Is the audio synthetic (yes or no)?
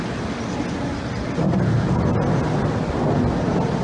no